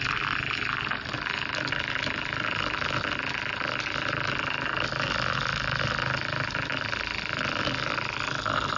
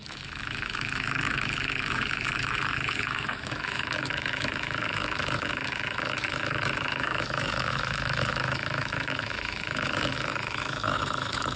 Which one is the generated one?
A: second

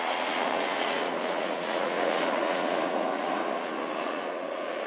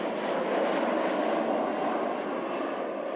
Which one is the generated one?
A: first